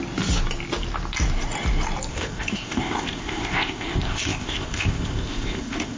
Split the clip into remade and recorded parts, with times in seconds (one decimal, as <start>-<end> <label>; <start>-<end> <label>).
0.0-2.1 recorded; 2.1-6.0 remade